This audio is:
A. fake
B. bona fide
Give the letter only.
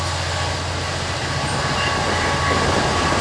B